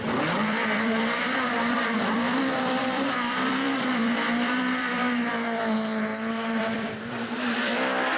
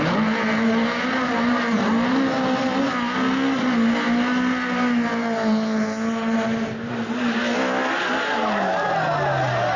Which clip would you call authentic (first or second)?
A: second